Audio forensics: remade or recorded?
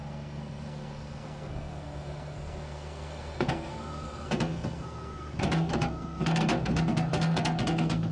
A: remade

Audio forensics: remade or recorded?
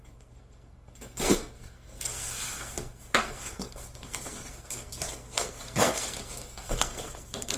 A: remade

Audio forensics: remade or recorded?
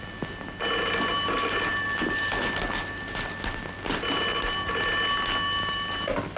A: recorded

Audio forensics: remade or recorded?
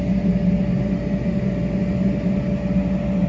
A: recorded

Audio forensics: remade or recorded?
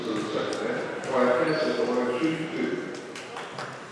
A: recorded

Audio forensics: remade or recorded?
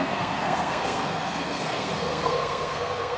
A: remade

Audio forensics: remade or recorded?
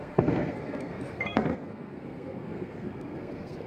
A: remade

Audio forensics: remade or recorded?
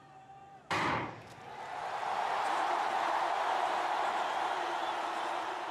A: remade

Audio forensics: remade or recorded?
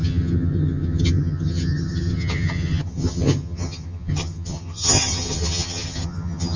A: remade